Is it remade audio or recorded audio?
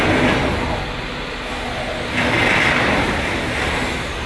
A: recorded